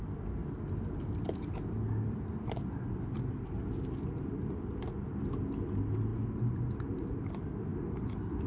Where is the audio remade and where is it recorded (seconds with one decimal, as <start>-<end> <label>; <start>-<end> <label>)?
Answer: 0.0-8.5 recorded